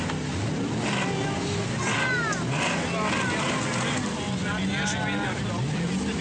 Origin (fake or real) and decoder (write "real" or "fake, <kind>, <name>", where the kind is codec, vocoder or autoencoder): real